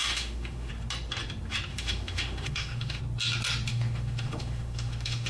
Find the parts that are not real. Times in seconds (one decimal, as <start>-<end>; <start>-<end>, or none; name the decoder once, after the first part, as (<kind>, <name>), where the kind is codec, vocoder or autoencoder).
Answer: 0.0-0.7 (autoencoder, DAC-VAE); 1.7-3.0; 3.7-5.3

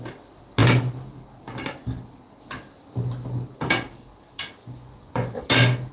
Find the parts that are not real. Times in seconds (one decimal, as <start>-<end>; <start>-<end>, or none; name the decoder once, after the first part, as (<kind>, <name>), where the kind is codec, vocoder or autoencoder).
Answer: 4.6-5.4 (vocoder, Vocos)

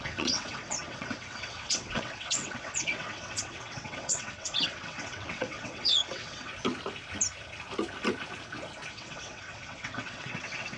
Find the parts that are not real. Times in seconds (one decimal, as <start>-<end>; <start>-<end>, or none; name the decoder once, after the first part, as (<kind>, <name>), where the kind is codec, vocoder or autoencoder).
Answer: 0.0-6.5 (vocoder, WaveNeXt); 8.9-10.8

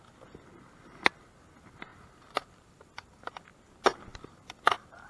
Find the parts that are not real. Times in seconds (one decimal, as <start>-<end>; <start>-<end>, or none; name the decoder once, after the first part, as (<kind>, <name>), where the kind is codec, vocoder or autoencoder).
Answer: 1.9-3.3 (vocoder, BigVGAN v2); 4.1-5.1

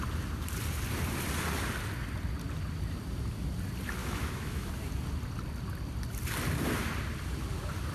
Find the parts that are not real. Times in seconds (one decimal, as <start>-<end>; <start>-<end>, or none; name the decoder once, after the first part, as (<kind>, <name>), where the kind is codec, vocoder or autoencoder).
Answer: 4.0-4.7 (autoencoder, DAC-VAE)

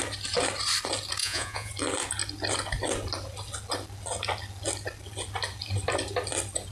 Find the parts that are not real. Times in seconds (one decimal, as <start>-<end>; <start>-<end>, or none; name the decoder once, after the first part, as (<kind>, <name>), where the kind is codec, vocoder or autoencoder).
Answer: 1.2-1.7 (vocoder, Vocos)